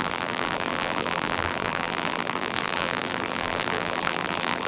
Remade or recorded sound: remade